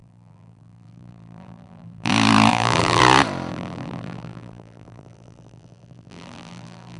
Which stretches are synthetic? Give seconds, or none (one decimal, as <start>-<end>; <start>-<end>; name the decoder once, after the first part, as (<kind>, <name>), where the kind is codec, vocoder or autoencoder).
0.0-2.1 (vocoder, BigVGAN v2); 2.5-3.0; 3.5-7.0